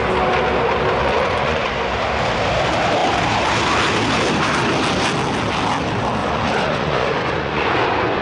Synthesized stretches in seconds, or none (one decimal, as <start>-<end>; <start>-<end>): 1.0-1.7; 6.2-8.2